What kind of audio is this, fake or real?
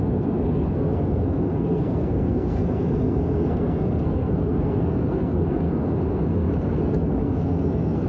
fake